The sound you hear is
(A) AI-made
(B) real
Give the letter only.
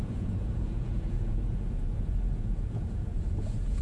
A